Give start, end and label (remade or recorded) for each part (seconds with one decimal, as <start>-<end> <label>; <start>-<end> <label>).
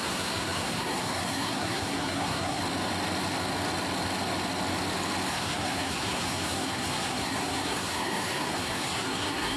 0.0-2.6 remade; 2.6-5.3 recorded; 5.3-9.6 remade